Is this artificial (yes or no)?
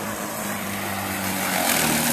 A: yes